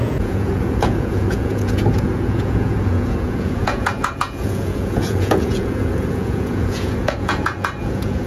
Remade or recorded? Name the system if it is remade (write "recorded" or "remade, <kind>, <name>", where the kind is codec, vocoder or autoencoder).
remade, vocoder, Vocos